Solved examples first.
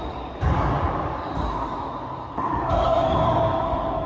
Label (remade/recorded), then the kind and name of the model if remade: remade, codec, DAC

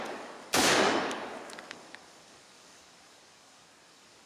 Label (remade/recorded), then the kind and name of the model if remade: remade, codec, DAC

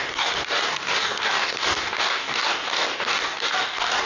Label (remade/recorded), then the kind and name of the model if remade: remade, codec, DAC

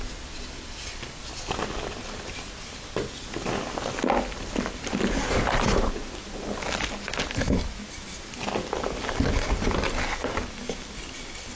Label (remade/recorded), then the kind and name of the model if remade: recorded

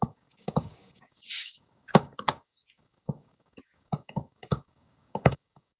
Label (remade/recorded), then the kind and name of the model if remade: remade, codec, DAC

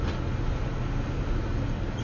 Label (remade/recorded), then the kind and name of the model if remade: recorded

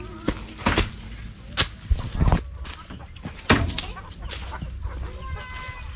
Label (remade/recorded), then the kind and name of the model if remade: recorded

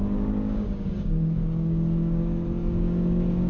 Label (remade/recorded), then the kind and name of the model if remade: remade, codec, DAC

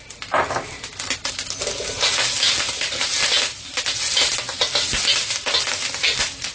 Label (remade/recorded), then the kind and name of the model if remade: recorded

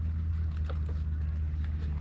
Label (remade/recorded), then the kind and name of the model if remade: recorded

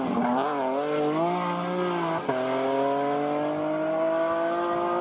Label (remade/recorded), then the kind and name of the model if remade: recorded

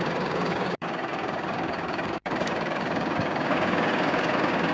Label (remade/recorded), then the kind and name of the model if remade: remade, codec, DAC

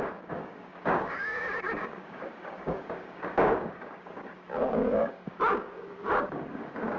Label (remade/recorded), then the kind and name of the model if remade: remade, codec, DAC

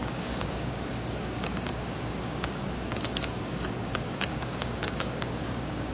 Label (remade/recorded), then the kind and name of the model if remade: remade, codec, DAC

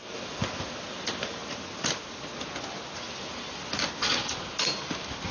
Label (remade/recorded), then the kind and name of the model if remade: recorded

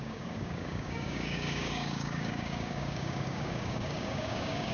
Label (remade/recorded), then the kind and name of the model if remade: remade, codec, DAC